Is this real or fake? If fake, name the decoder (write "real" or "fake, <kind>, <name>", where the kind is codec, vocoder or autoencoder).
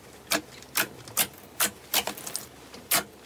real